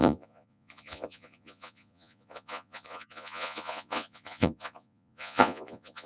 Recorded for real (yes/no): no